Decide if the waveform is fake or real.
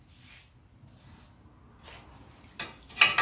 real